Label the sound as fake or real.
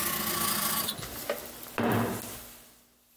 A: real